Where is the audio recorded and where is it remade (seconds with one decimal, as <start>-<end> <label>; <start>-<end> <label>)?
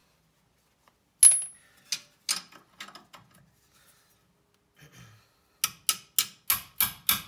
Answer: 0.0-7.3 recorded